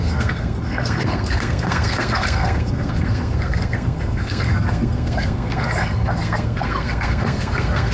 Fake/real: fake